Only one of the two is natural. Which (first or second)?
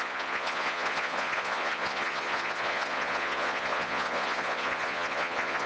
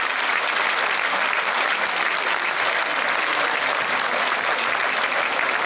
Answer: second